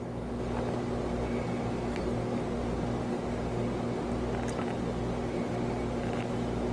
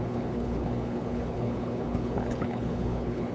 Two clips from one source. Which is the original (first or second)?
first